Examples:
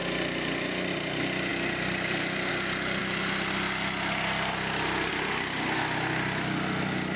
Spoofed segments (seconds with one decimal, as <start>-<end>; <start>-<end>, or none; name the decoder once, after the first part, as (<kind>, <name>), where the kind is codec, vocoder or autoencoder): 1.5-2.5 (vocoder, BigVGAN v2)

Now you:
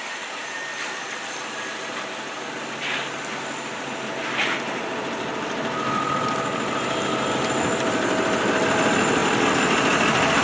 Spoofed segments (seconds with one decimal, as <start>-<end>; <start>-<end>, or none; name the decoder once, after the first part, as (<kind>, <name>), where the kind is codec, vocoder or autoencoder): 0.0-0.4 (vocoder, BigVGAN v2); 1.9-10.4

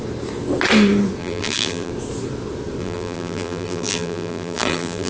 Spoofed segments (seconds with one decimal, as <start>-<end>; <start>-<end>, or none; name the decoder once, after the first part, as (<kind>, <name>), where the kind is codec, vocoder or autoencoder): 1.2-1.9 (vocoder, BigVGAN v2); 2.8-5.1